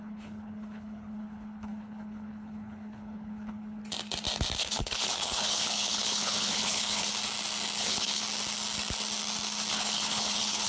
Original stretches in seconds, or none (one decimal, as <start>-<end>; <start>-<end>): 3.8-4.6; 7.1-7.8; 8.2-9.7